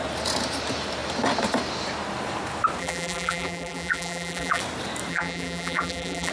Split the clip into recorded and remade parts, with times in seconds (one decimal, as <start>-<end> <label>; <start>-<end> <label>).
0.0-2.8 recorded; 2.8-4.6 remade; 4.6-5.1 recorded; 5.1-6.3 remade